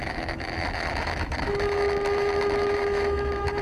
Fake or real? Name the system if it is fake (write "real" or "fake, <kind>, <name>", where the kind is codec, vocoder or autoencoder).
fake, autoencoder, DAC-VAE